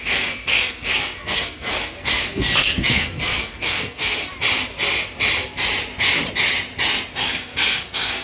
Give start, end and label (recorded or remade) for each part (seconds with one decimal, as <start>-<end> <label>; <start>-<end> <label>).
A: 0.0-4.3 remade; 4.3-7.2 recorded; 7.2-8.2 remade